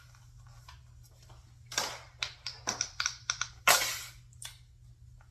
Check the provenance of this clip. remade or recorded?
recorded